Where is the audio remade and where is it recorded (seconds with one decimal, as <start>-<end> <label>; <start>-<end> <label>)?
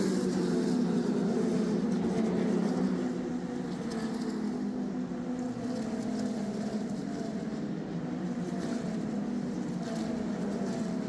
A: 0.0-7.0 recorded; 7.0-9.2 remade; 9.2-11.1 recorded